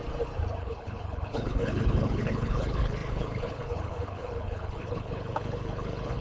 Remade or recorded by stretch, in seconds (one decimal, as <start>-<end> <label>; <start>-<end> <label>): 0.0-0.6 recorded; 0.6-6.2 remade